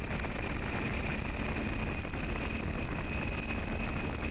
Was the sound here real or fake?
real